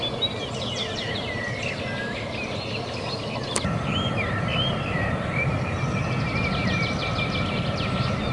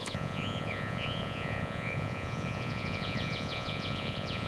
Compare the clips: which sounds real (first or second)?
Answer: first